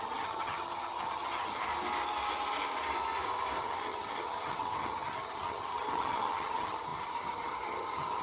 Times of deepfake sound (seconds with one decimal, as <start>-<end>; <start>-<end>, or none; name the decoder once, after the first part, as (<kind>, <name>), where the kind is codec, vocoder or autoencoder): 0.0-1.7 (vocoder, HiFi-GAN); 3.6-8.2